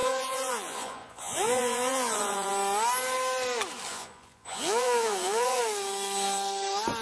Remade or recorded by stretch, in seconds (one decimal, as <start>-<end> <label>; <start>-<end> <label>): 0.0-2.5 remade; 2.5-3.9 recorded; 3.9-5.6 remade; 5.6-7.0 recorded